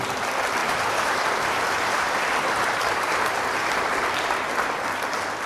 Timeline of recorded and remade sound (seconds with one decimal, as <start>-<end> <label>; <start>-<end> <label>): 0.0-0.6 recorded; 0.6-3.9 remade; 3.9-5.5 recorded